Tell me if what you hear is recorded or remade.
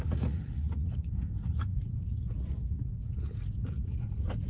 remade